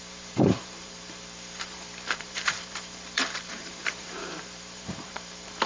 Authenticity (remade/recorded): remade